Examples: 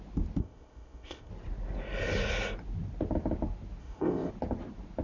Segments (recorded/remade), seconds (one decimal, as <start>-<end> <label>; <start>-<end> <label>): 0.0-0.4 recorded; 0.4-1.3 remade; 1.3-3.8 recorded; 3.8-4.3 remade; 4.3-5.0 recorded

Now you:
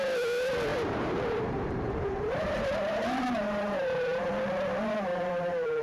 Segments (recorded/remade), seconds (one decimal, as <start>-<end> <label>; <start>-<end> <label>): 0.0-0.7 recorded; 0.7-4.2 remade; 4.2-5.1 recorded; 5.1-5.8 remade

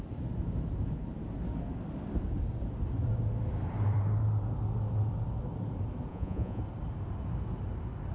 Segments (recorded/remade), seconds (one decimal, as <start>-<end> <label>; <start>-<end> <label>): 0.0-6.1 recorded; 6.1-6.6 remade; 6.6-8.1 recorded

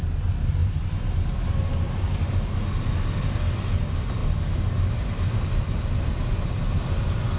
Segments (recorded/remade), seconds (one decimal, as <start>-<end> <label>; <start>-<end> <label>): 0.0-0.6 recorded; 0.6-2.2 remade; 2.2-7.4 recorded